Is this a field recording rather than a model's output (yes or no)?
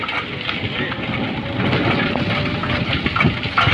yes